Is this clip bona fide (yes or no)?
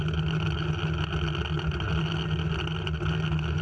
yes